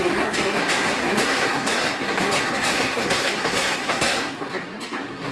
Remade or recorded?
remade